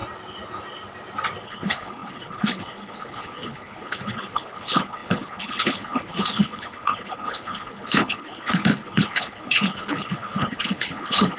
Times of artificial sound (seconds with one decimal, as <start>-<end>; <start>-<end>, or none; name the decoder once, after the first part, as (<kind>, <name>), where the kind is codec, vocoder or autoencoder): 1.4-11.4 (codec, HILCodec)